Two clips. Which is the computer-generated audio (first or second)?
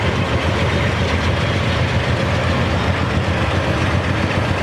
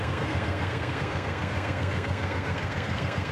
second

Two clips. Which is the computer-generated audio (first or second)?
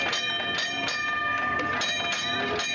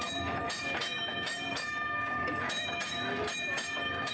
second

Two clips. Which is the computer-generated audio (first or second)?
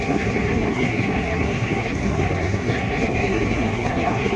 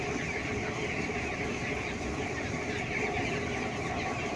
first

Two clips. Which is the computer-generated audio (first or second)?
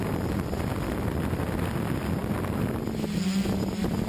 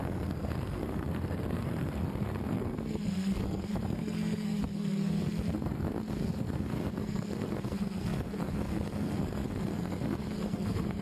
second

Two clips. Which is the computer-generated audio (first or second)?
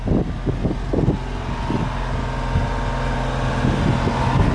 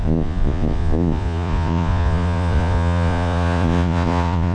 second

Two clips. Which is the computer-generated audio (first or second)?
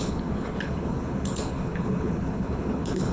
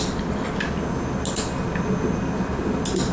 first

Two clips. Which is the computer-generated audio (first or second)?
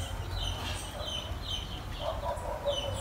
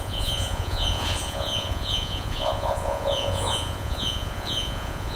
second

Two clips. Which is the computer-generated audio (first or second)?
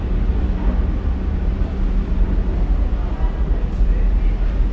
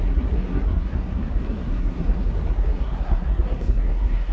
second